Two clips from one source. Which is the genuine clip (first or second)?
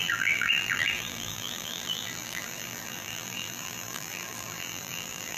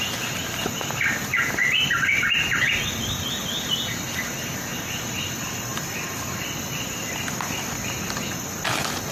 second